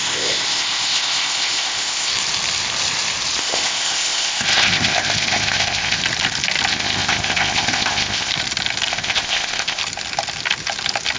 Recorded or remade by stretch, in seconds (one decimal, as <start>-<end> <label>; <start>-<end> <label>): 0.0-2.1 remade; 2.1-3.4 recorded; 3.4-6.0 remade; 6.0-6.7 recorded; 6.7-8.3 remade; 8.3-8.9 recorded; 8.9-9.8 remade; 9.8-11.2 recorded